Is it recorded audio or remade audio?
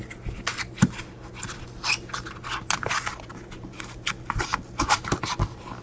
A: recorded